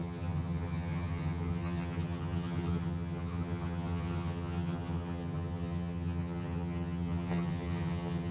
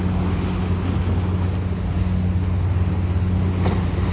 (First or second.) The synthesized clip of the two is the first